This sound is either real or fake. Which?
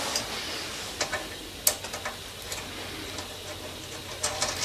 real